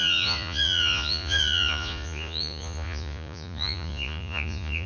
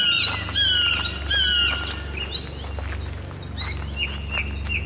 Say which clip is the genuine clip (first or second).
second